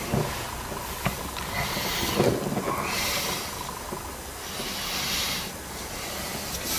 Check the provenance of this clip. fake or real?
real